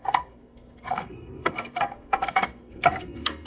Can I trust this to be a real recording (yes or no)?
no